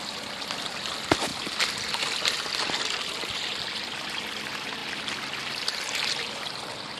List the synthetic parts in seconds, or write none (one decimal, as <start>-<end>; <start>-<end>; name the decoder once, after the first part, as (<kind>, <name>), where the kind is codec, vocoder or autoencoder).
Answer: none